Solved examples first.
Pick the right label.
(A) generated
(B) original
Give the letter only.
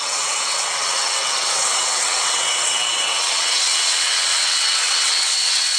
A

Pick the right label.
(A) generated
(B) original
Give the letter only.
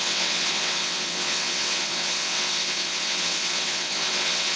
A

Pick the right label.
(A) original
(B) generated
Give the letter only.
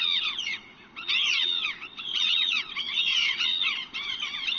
B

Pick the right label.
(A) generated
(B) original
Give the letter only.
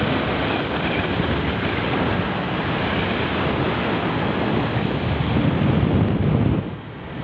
B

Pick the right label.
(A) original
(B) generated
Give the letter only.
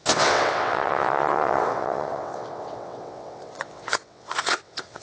B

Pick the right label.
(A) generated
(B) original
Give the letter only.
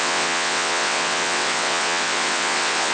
A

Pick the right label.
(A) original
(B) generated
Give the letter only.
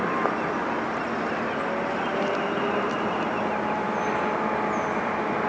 A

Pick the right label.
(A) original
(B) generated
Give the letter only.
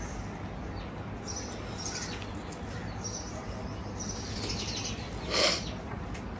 A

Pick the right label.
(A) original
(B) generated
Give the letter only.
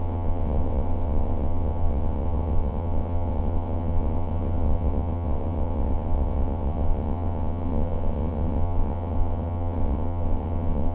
B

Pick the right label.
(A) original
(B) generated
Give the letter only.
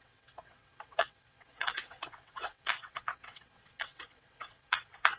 B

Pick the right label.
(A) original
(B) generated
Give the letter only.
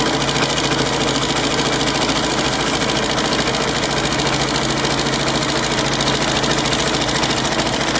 A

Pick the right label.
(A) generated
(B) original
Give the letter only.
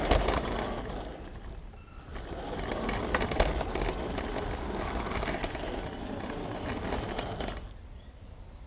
B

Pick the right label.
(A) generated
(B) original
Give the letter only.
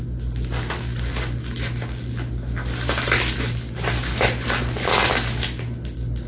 B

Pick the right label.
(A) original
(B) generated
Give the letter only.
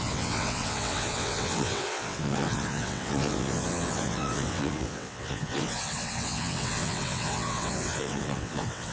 B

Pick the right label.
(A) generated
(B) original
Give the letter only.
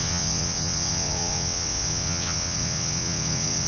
A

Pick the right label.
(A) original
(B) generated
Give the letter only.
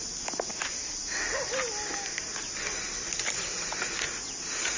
A